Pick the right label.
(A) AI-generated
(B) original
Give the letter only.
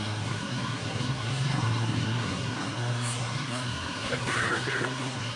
A